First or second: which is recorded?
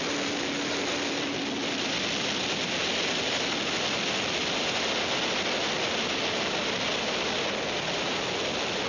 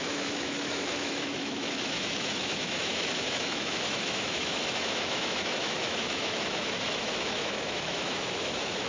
first